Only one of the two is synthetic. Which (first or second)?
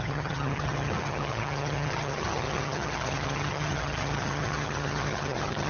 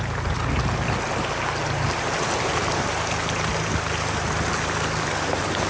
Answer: first